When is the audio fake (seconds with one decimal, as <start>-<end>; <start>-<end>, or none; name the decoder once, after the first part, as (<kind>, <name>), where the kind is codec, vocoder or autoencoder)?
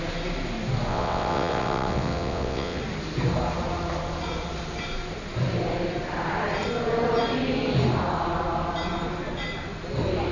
0.9-2.8 (vocoder, WaveNeXt)